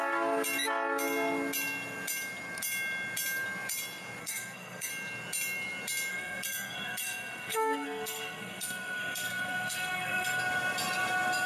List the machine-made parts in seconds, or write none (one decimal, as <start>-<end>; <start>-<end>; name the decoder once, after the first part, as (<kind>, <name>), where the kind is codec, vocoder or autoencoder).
4.2-4.9 (codec, SNAC); 6.1-10.4